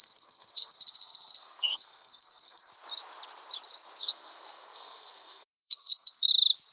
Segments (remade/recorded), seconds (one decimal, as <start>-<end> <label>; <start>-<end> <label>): 0.0-2.7 remade; 2.7-4.0 recorded; 4.0-6.3 remade; 6.3-6.7 recorded